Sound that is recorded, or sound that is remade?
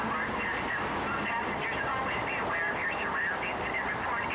recorded